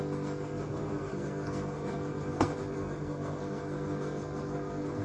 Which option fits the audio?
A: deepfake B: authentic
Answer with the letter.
A